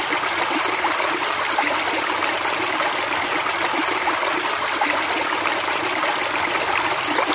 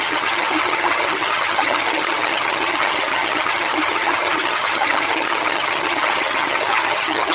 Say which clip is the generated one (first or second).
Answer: second